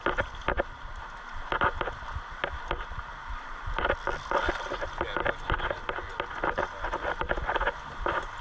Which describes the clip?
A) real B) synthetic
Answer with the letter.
A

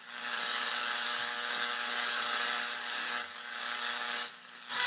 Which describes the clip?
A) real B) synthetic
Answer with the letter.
B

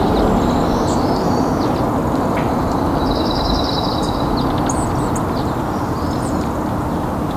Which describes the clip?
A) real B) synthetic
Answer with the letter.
A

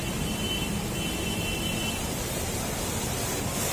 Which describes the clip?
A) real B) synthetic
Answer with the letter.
A